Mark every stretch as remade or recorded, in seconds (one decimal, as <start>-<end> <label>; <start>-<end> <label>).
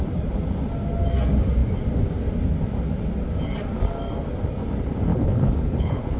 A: 0.0-5.1 recorded; 5.1-6.2 remade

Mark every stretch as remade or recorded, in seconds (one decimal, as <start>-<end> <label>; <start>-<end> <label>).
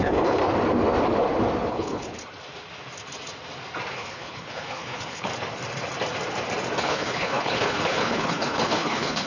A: 0.0-0.4 remade; 0.4-1.7 recorded; 1.7-2.1 remade; 2.1-3.9 recorded; 3.9-5.3 remade; 5.3-6.8 recorded; 6.8-9.3 remade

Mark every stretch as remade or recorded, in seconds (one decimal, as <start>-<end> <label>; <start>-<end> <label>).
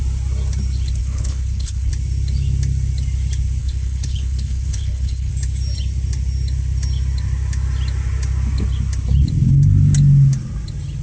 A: 0.0-1.0 recorded; 1.0-1.9 remade; 1.9-3.6 recorded; 3.6-5.3 remade; 5.3-11.0 recorded